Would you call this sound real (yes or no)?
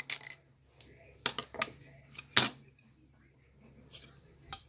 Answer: yes